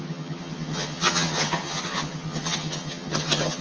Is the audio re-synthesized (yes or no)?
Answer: yes